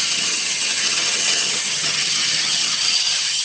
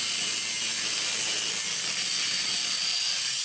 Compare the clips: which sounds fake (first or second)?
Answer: first